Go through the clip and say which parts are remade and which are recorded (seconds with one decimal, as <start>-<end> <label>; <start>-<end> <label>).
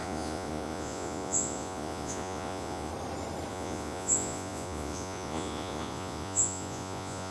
0.0-2.9 remade; 2.9-3.5 recorded; 3.5-7.3 remade